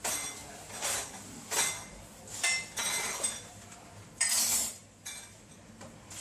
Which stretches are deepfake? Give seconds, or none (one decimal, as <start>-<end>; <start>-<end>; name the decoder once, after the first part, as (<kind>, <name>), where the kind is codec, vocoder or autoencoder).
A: none